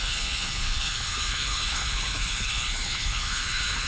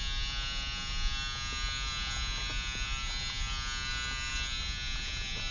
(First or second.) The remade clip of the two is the first